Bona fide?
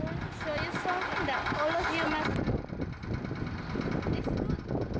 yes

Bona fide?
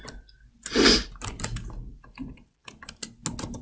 yes